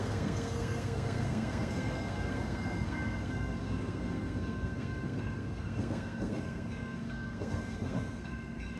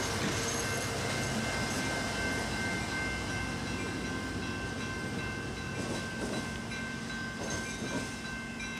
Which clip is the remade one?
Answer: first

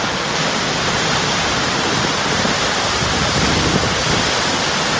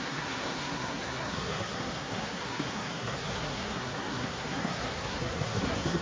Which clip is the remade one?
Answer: second